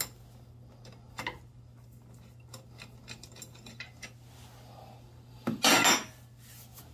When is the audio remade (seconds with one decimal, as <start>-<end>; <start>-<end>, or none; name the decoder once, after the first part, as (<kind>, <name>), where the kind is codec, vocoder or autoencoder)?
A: none